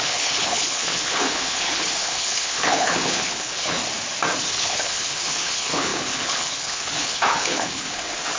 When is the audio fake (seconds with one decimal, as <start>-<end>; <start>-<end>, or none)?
0.0-3.8; 4.4-8.4